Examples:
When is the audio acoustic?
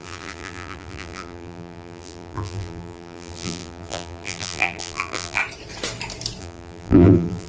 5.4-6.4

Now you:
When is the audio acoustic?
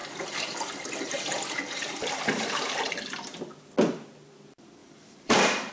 3.4-4.8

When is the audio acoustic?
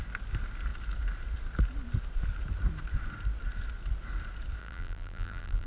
0.0-4.6